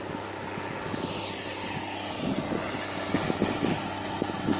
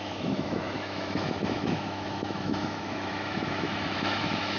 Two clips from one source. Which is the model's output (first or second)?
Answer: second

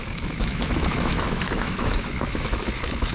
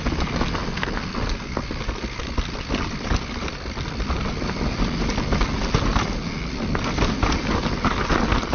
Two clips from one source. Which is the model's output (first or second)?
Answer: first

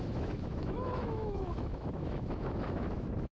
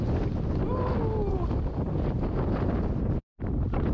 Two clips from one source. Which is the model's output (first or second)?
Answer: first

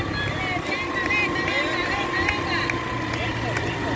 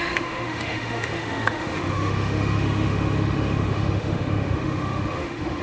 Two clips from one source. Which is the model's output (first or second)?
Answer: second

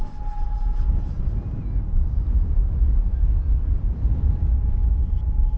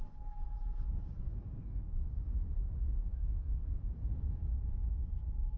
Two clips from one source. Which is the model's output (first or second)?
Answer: second